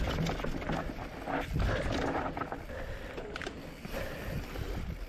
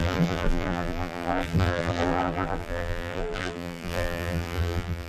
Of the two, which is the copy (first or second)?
second